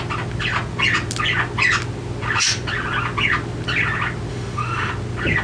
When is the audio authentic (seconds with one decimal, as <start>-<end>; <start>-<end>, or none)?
0.0-4.3; 4.9-5.4